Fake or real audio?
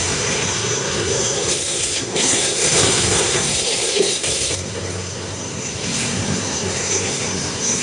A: fake